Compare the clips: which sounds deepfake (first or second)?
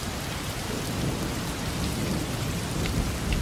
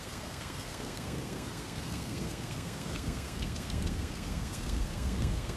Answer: second